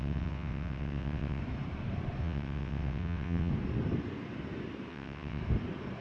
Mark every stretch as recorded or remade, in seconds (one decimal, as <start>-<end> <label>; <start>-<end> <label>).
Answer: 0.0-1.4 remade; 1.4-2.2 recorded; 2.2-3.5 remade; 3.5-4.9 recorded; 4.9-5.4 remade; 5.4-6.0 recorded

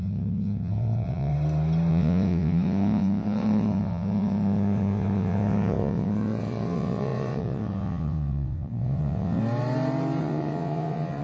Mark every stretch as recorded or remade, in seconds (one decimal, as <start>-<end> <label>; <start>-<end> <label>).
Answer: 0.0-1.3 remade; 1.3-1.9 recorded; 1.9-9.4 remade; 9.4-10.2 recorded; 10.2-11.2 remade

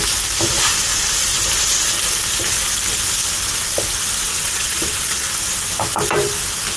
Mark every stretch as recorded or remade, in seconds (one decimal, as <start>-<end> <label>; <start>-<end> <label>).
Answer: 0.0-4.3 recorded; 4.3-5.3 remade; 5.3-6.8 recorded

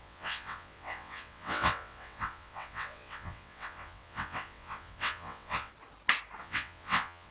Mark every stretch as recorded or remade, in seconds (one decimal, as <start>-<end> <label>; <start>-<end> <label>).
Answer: 0.0-5.7 remade; 5.7-6.4 recorded; 6.4-7.3 remade

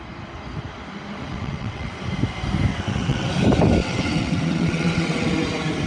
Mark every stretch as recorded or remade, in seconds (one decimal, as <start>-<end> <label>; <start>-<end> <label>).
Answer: 0.0-1.3 recorded; 1.3-1.9 remade; 1.9-2.7 recorded; 2.7-3.3 remade; 3.3-3.8 recorded; 3.8-5.3 remade; 5.3-5.9 recorded